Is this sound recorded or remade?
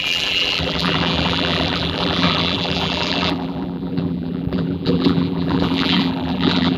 remade